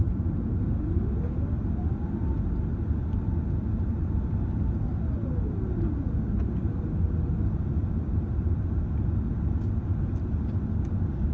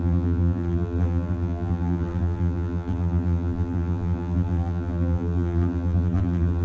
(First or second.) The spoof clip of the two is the second